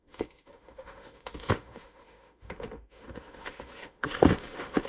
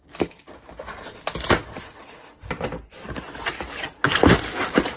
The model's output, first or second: first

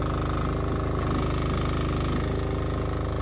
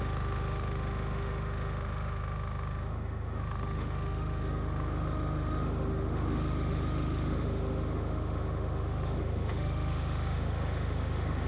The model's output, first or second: second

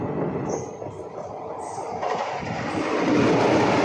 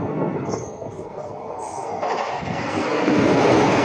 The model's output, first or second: second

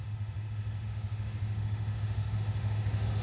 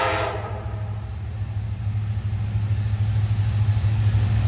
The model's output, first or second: first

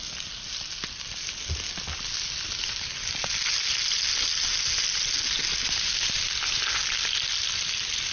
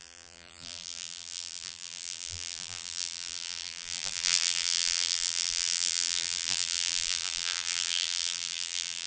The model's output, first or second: second